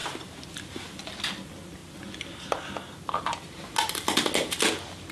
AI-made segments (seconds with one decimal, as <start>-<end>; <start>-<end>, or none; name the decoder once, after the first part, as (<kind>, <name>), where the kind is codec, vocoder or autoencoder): none